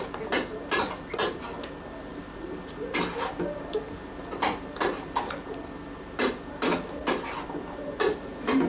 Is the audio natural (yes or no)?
yes